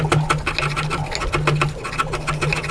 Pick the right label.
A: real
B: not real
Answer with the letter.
A